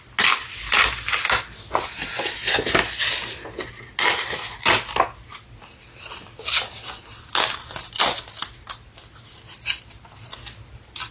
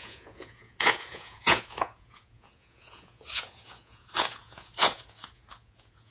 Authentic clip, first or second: first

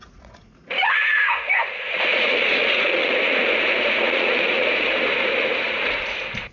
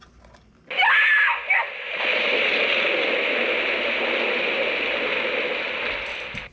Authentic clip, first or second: second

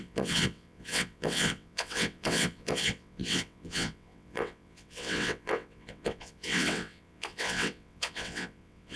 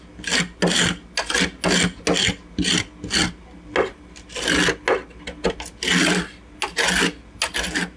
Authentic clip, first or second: second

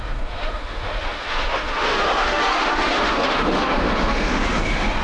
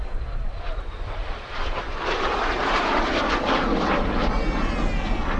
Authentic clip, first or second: second